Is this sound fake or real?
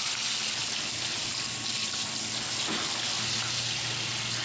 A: real